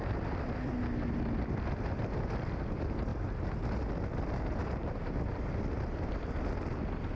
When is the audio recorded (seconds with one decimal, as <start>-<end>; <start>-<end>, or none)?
0.0-4.8; 5.5-7.1